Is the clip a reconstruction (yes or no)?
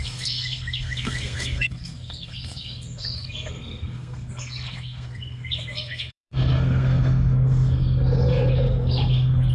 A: yes